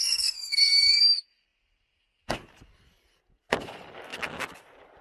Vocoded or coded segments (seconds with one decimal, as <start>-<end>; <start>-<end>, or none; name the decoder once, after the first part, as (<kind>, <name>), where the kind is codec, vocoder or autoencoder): 0.0-1.0 (codec, SNAC)